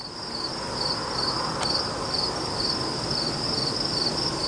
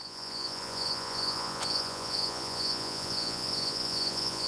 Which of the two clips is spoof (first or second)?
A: second